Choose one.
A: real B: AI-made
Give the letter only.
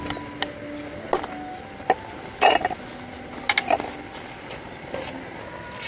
A